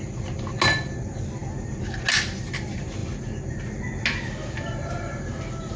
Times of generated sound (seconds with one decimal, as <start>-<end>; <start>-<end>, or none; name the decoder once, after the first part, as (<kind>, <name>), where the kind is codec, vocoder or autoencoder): none